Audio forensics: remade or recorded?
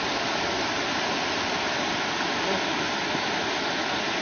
recorded